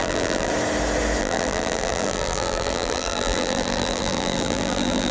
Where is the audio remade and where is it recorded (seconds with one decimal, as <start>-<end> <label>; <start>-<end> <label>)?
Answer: 0.0-0.5 remade; 0.5-1.2 recorded; 1.2-5.1 remade